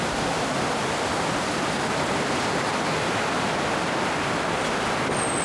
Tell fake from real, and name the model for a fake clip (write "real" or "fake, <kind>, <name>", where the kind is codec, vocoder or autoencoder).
real